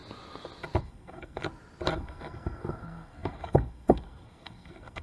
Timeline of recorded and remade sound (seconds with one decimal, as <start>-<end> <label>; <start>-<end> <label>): 0.0-0.8 recorded; 0.8-1.4 remade; 1.4-1.9 recorded; 1.9-5.0 remade